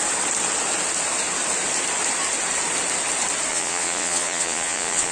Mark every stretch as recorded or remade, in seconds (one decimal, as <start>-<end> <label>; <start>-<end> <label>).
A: 0.0-3.5 recorded; 3.5-5.1 remade